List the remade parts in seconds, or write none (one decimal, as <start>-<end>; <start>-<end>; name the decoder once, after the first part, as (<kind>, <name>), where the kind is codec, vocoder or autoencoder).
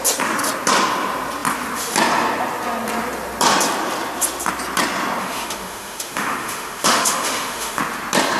5.2-7.8 (autoencoder, DAC-VAE)